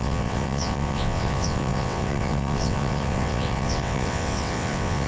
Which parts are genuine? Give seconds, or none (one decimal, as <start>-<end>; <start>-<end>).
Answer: none